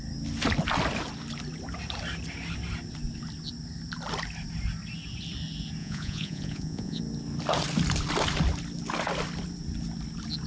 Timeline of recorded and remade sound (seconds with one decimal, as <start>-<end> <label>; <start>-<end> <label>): 0.0-5.8 recorded; 5.8-7.0 remade; 7.0-10.5 recorded